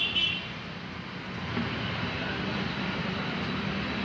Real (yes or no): yes